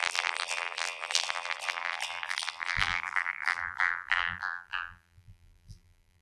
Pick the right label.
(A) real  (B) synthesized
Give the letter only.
B